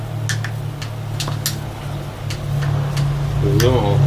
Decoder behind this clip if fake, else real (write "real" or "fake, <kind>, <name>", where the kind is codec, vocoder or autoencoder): real